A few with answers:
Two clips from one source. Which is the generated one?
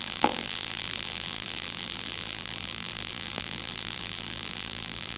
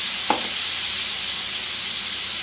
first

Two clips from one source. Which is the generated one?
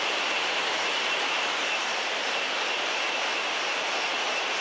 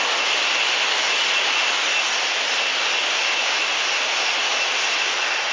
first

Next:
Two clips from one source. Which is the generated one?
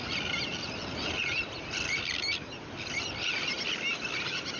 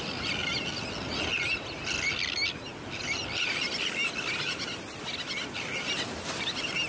first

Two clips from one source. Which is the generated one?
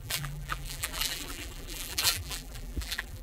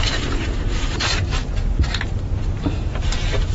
first